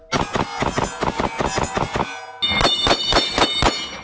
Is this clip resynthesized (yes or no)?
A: no